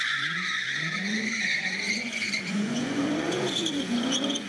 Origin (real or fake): fake